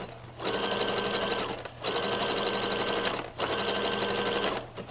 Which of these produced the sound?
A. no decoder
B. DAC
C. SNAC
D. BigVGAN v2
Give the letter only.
A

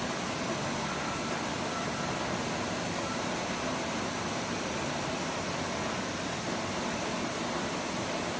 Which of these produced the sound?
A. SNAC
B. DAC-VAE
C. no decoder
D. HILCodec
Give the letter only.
C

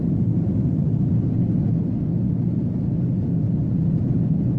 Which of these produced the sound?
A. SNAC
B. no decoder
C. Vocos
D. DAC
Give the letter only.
B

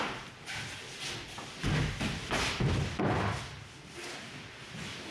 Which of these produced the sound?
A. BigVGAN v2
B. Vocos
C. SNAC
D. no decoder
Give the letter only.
D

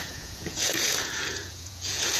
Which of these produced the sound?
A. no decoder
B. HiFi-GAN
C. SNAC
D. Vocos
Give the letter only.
D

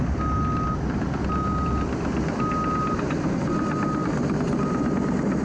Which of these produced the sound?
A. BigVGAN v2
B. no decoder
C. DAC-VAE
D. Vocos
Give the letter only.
B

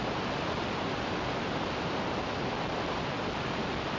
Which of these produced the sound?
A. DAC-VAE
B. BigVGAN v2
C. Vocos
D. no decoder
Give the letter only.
D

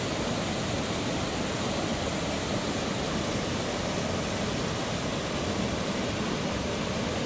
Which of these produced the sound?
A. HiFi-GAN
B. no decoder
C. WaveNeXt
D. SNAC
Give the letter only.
B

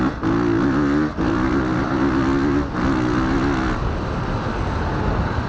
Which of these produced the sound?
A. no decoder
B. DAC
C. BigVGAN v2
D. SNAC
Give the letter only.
A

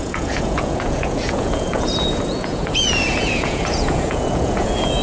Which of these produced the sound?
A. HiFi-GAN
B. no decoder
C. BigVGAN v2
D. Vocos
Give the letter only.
D